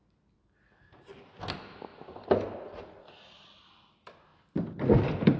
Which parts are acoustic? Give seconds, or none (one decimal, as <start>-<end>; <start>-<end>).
0.0-5.4